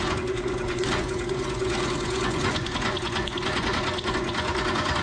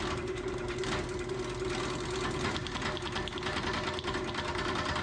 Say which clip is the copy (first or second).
first